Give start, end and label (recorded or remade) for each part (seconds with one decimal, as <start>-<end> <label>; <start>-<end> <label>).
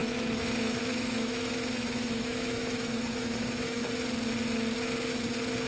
0.0-3.8 remade; 3.8-5.7 recorded